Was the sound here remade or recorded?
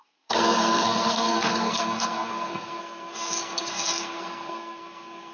remade